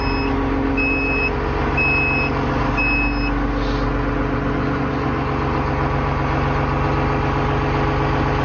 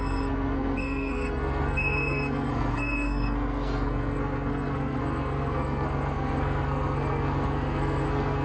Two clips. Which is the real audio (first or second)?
first